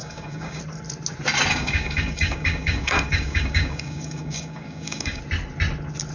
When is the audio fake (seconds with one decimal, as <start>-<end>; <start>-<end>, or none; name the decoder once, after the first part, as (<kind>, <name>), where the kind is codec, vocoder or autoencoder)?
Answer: 0.0-0.6 (codec, DAC); 1.5-5.2